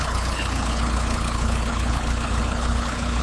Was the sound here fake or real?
fake